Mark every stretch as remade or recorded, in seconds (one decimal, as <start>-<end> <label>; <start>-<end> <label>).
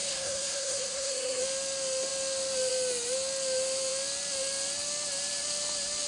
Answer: 0.0-1.4 remade; 1.4-6.1 recorded